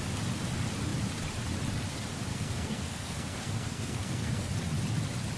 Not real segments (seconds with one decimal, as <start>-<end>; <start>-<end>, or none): 2.3-4.5

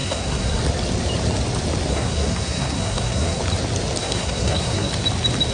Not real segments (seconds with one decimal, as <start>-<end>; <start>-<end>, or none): 0.0-0.6; 1.9-3.4; 4.0-4.9